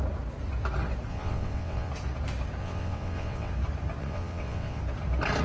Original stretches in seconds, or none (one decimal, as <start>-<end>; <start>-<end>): 0.0-1.1; 1.9-2.6; 3.5-4.0; 4.8-5.4